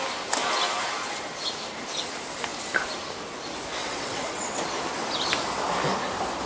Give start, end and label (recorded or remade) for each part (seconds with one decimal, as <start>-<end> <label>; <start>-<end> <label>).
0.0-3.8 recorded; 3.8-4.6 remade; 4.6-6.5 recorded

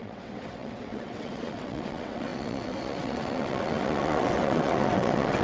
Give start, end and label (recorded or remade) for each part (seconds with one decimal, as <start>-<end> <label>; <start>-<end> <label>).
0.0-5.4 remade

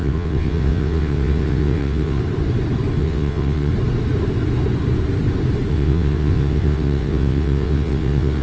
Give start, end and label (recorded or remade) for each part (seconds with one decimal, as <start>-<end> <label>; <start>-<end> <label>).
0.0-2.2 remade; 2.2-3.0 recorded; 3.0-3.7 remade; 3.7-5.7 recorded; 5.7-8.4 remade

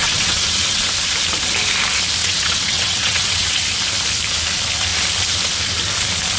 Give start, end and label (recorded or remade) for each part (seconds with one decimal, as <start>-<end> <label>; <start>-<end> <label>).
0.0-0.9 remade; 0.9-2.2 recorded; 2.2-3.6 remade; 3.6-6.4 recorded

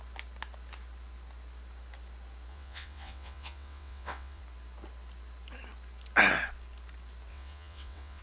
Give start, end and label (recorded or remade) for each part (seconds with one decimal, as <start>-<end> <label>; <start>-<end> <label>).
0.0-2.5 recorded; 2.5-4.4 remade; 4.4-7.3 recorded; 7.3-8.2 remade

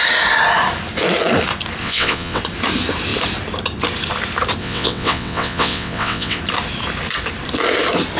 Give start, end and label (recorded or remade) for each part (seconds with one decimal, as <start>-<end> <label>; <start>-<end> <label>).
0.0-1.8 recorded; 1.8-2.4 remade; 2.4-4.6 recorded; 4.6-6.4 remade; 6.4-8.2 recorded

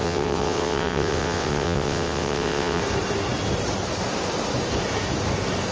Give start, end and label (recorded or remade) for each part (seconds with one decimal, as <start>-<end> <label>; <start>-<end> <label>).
0.0-2.8 remade; 2.8-5.7 recorded

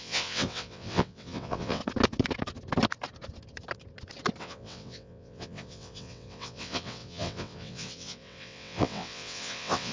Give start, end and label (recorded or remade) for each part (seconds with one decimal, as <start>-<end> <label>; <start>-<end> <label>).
0.0-1.8 remade; 1.8-4.4 recorded; 4.4-9.9 remade